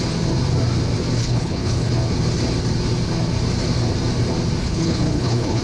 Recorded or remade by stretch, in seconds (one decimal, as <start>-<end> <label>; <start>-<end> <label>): 0.0-1.2 recorded; 1.2-1.9 remade; 1.9-4.6 recorded; 4.6-5.6 remade